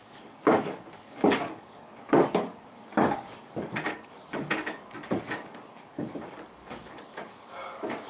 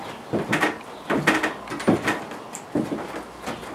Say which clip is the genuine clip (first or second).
second